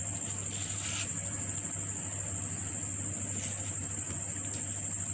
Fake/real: real